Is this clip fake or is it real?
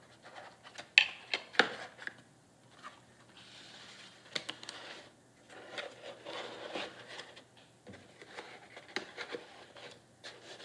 real